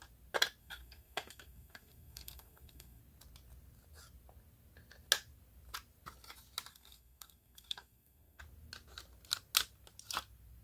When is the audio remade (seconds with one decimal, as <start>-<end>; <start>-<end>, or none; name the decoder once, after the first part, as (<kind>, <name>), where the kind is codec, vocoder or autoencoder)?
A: 0.6-3.0 (codec, SNAC); 6.7-8.4